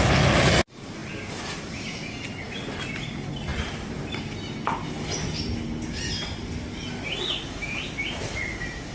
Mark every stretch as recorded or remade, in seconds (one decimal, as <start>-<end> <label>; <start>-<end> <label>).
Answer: 0.0-8.9 recorded